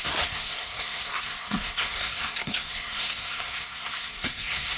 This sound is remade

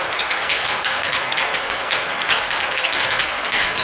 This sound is remade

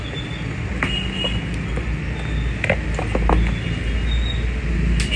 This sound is recorded